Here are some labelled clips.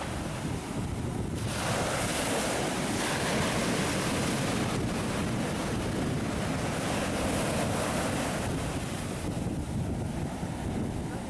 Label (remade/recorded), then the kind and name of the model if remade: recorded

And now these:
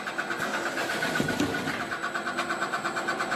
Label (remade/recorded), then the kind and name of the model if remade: recorded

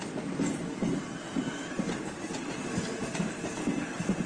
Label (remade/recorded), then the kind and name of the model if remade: recorded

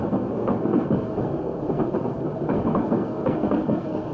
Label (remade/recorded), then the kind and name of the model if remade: remade, codec, SNAC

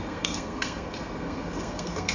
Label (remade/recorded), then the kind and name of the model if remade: remade, codec, SNAC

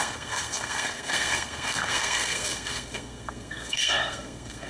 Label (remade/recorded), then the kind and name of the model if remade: remade, codec, SNAC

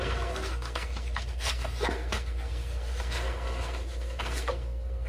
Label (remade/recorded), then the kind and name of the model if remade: remade, codec, SNAC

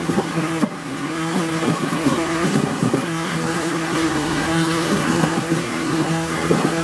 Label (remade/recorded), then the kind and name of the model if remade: remade, codec, SNAC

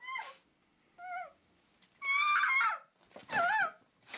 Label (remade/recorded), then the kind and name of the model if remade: recorded